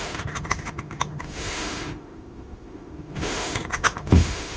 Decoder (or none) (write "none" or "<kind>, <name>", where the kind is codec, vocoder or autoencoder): autoencoder, DAC-VAE